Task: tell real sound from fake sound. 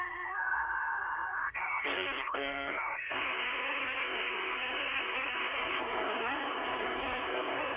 fake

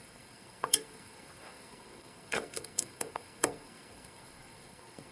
fake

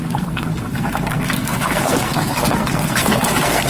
fake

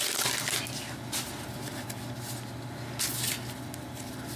real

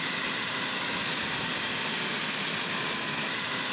real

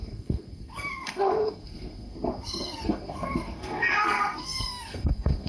fake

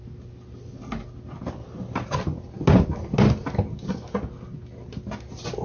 real